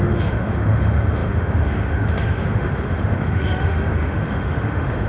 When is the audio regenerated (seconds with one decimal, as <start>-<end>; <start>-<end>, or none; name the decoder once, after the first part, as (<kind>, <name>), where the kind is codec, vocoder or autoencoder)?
0.0-5.1 (autoencoder, DAC-VAE)